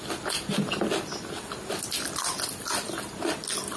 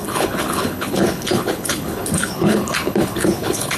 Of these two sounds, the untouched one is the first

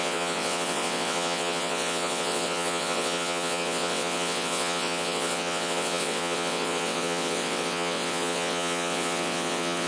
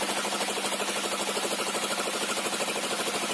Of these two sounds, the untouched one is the second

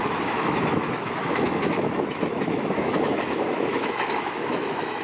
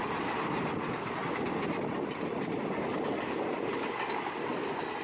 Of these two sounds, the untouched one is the second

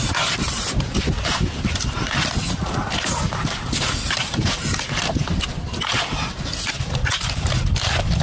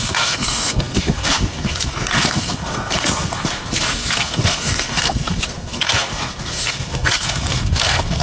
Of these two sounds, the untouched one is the first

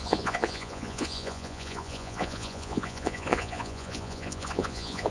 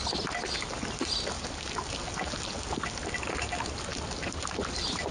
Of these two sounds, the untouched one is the second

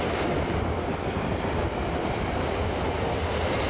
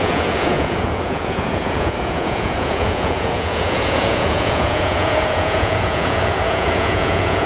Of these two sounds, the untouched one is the first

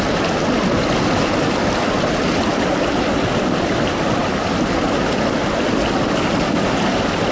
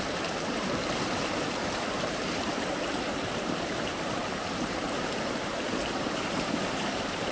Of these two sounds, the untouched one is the first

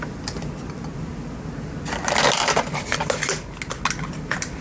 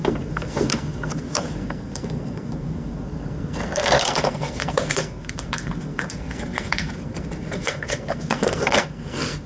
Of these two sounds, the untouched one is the first